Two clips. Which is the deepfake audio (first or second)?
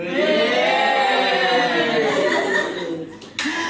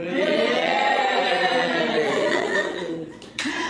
second